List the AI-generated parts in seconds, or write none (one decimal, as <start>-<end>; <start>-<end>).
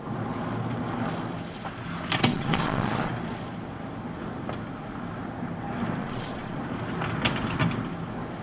2.3-3.1; 6.0-6.6